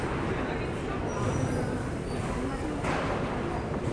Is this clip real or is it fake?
real